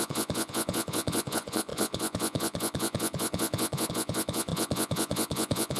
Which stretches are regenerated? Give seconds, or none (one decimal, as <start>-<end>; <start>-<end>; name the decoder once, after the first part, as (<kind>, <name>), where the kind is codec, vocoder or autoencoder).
0.0-5.8 (vocoder, Vocos)